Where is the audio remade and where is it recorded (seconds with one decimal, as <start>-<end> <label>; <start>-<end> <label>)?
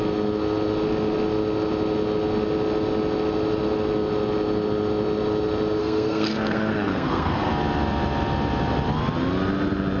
0.0-5.8 recorded; 5.8-7.5 remade; 7.5-10.0 recorded